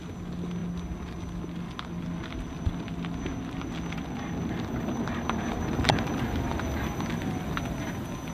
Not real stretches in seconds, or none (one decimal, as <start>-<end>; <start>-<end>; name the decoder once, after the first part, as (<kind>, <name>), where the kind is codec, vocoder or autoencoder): none